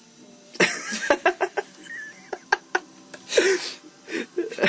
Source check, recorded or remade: recorded